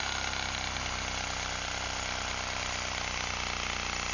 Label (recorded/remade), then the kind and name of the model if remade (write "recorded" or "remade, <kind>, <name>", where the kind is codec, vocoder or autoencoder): recorded